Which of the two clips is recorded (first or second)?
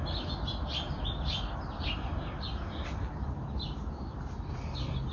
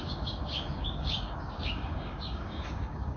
first